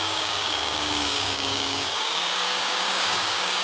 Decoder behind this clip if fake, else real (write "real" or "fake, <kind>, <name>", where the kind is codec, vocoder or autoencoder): fake, codec, DAC